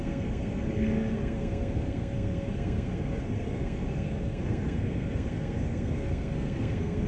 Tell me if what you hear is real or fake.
fake